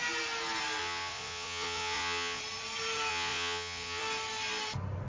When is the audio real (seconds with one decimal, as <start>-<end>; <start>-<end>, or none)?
0.0-0.8; 2.4-3.1; 4.0-5.1